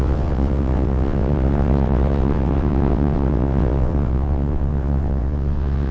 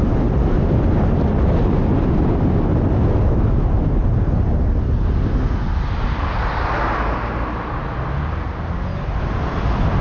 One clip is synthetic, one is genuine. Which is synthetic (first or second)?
first